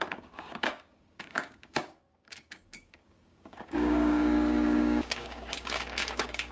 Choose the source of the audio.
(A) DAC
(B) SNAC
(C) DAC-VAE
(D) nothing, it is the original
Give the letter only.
A